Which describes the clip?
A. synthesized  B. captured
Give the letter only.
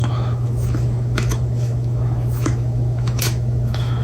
A